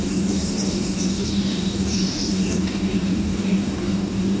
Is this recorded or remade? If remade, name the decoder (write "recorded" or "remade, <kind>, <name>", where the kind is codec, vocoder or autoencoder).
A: remade, codec, DAC